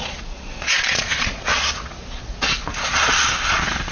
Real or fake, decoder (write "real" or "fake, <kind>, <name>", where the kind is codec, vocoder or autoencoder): fake, vocoder, Vocos